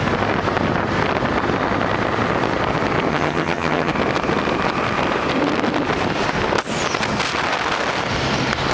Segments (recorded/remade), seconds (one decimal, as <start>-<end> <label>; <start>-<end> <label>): 0.0-3.1 recorded; 3.1-3.9 remade; 3.9-8.7 recorded